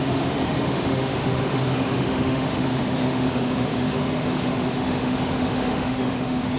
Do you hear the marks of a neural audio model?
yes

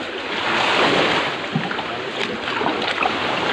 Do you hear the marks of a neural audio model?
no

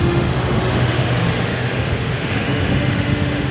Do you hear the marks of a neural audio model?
yes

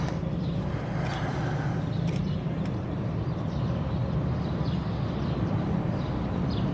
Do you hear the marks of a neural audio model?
no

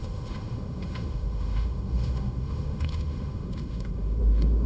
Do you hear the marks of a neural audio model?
yes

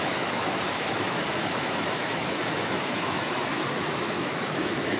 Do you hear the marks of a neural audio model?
yes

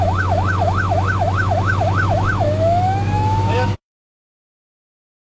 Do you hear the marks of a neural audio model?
yes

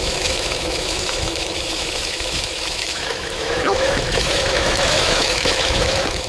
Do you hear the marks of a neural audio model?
yes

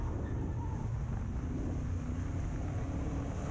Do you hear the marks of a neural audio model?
no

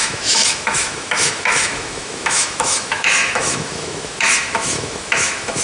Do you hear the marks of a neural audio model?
yes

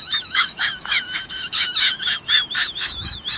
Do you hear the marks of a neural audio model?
yes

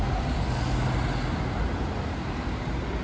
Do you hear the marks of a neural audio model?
no